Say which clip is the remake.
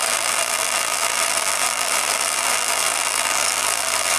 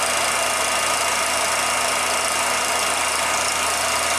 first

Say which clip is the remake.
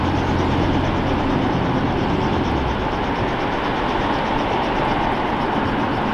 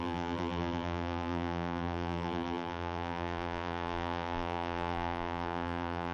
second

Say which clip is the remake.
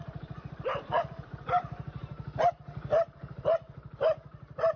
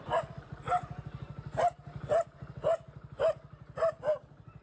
first